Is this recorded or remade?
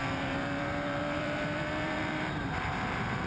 remade